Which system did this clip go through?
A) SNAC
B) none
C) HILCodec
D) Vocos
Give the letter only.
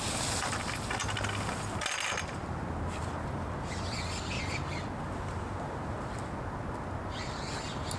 B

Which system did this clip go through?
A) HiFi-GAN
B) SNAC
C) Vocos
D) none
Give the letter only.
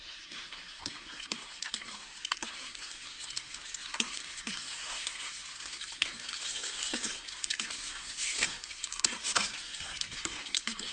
B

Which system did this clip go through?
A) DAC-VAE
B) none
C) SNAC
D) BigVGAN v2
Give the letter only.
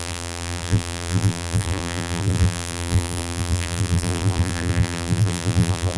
D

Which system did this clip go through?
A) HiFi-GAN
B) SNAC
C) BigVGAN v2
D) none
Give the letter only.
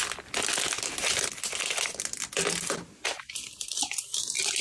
D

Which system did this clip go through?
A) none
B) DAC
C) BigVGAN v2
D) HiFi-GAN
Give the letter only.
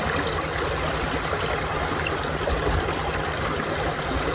A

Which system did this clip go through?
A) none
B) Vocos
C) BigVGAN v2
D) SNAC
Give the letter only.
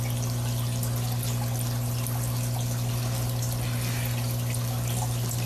A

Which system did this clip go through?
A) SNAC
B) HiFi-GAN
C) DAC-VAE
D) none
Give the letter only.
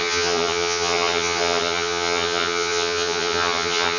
B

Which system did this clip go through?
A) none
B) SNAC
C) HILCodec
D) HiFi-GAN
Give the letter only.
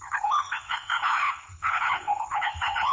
C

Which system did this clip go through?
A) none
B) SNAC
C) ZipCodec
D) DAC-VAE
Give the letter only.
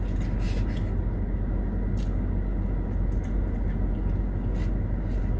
A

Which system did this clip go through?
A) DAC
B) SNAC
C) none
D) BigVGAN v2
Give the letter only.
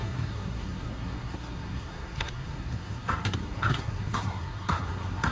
B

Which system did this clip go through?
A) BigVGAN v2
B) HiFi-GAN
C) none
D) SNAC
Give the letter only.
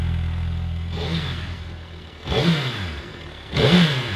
D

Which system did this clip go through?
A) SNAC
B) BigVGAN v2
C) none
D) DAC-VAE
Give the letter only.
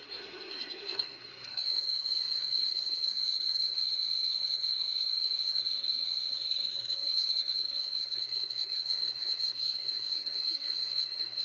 A